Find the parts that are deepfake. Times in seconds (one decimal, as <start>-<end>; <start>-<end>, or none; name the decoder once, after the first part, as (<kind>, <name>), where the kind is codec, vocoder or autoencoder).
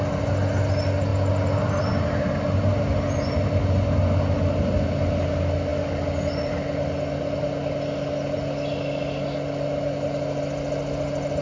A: none